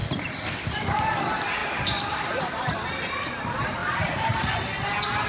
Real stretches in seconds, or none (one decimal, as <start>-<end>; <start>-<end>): 1.2-1.6; 2.6-3.8; 4.6-5.3